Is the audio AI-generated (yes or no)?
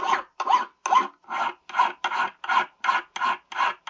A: no